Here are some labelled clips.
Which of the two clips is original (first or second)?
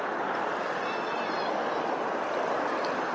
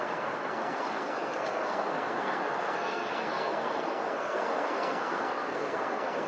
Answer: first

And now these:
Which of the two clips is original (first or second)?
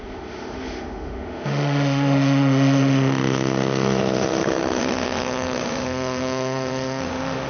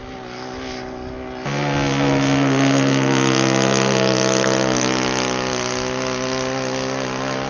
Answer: second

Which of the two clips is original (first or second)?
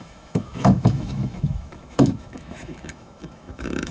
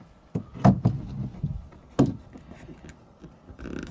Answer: second